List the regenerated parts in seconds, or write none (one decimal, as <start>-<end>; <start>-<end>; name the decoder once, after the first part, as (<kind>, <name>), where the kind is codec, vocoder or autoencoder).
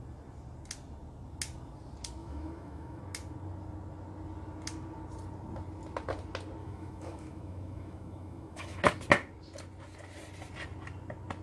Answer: 2.2-3.0 (autoencoder, DAC-VAE); 6.6-8.8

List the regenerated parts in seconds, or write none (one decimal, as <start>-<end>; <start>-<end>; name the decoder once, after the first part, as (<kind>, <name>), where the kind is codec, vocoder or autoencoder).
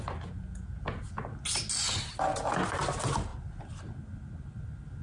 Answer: none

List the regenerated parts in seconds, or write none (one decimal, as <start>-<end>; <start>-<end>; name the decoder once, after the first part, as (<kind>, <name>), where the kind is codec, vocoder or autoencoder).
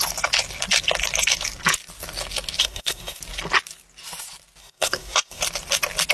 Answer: 2.6-3.2 (codec, SNAC); 4.6-5.4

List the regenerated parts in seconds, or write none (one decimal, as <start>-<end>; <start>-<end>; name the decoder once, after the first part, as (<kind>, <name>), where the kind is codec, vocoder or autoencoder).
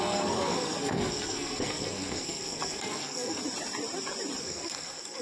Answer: 0.0-3.4 (codec, SNAC); 4.4-5.2